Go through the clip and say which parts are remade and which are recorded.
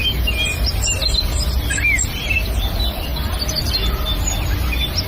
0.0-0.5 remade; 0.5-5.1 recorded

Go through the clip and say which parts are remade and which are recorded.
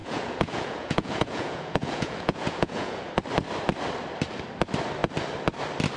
0.0-3.1 remade; 3.1-6.0 recorded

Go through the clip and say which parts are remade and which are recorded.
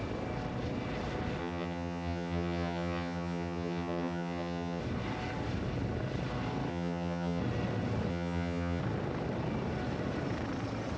0.0-1.4 recorded; 1.4-4.8 remade; 4.8-6.7 recorded; 6.7-7.4 remade; 7.4-8.1 recorded; 8.1-8.8 remade; 8.8-11.0 recorded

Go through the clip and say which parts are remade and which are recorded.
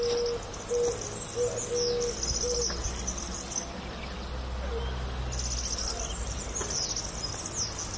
0.0-2.8 recorded; 2.8-3.8 remade; 3.8-8.0 recorded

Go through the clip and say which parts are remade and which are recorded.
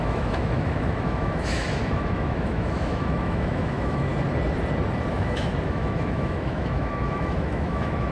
0.0-4.1 remade; 4.1-5.1 recorded; 5.1-8.1 remade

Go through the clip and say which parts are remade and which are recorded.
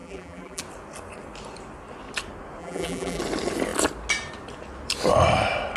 0.0-0.6 remade; 0.6-2.6 recorded; 2.6-3.2 remade; 3.2-5.8 recorded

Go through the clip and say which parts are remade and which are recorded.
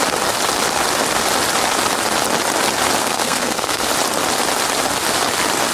0.0-3.0 recorded; 3.0-3.8 remade; 3.8-5.7 recorded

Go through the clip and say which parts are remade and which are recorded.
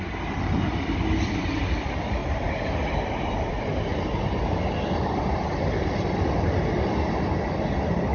0.0-2.2 recorded; 2.2-3.5 remade; 3.5-3.9 recorded; 3.9-4.6 remade; 4.6-8.1 recorded